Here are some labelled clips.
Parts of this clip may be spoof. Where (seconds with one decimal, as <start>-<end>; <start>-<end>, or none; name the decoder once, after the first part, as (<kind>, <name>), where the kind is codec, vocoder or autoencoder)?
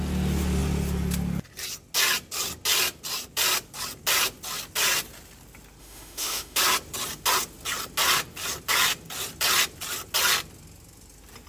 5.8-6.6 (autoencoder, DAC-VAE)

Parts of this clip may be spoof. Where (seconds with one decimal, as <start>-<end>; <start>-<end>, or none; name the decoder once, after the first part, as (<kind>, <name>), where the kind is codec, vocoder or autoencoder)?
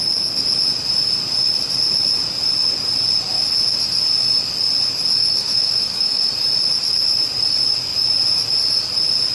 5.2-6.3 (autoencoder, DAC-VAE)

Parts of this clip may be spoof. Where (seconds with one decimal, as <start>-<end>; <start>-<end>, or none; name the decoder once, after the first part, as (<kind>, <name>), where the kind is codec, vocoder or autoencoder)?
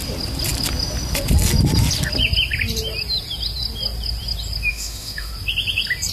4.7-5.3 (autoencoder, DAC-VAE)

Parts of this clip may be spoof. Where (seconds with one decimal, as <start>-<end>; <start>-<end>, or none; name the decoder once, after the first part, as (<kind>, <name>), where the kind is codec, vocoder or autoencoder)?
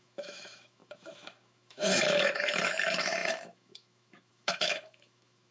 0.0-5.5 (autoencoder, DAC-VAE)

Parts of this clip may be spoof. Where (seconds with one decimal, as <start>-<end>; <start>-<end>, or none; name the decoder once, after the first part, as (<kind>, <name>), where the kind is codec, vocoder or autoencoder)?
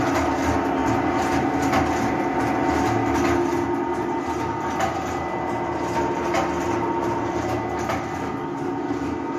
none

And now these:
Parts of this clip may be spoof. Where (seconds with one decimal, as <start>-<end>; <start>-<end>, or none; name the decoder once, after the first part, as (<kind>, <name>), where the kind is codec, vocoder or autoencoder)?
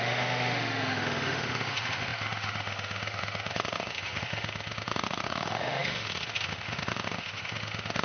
0.0-8.0 (autoencoder, DAC-VAE)